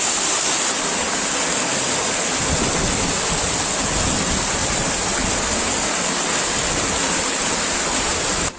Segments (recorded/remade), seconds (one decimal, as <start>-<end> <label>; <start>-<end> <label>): 0.0-8.6 recorded